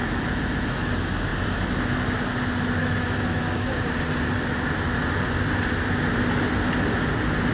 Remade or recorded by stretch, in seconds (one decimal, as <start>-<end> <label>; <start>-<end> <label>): 0.0-0.9 remade; 0.9-2.8 recorded; 2.8-3.8 remade; 3.8-7.5 recorded